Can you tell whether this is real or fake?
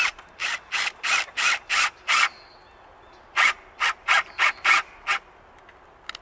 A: real